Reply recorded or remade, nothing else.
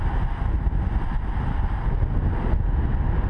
recorded